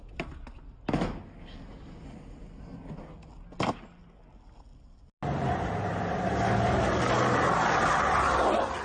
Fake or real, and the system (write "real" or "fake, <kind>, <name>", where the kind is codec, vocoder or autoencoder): real